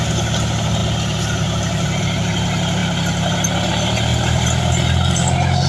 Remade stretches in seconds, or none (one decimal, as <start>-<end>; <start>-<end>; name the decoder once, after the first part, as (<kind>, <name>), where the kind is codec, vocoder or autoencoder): 4.1-4.8 (vocoder, BigVGAN v2)